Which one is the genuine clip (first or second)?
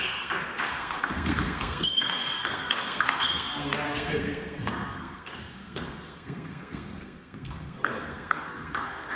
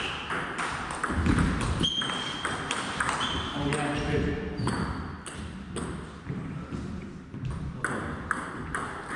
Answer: second